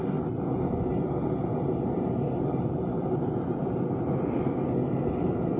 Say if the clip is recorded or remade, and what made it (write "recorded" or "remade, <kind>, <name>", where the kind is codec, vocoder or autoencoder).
recorded